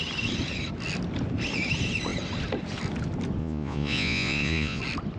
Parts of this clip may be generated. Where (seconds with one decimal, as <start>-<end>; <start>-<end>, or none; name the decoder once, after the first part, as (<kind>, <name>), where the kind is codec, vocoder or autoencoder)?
3.4-4.8 (vocoder, Vocos)